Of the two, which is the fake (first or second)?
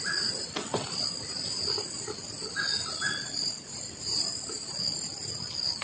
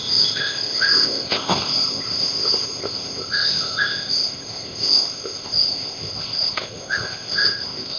second